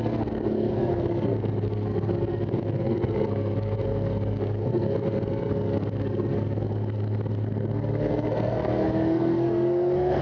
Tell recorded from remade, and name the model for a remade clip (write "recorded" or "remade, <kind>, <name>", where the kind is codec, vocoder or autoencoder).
remade, codec, SNAC